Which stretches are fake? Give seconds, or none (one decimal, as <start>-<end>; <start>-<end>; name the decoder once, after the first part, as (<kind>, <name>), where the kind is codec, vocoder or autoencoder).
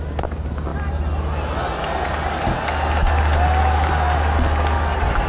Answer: none